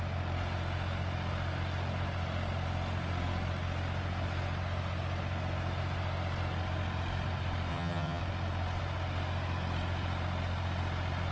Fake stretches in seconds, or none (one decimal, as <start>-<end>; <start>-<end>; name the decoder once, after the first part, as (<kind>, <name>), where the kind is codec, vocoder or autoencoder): 7.7-8.2 (vocoder, HiFi-GAN)